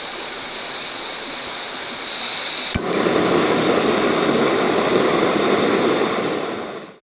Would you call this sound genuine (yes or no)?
yes